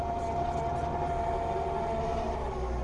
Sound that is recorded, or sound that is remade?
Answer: recorded